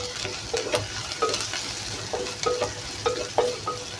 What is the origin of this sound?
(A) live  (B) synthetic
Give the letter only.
A